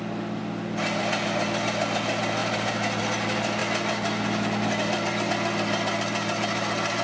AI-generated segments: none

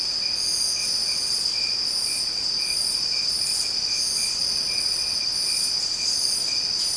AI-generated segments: 0.8-1.4; 4.4-5.2

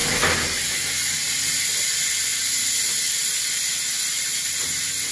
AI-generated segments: none

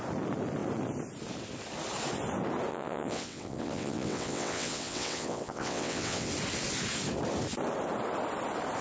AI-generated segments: 2.7-6.3

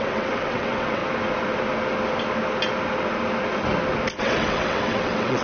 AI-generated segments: 0.0-1.0; 4.2-5.4

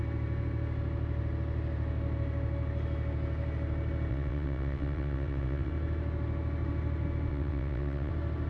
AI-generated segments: 4.1-5.7; 7.3-8.1